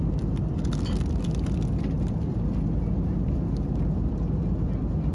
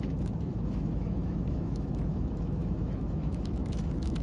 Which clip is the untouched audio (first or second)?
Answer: first